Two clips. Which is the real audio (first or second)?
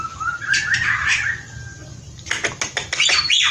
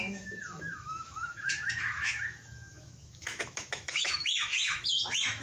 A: first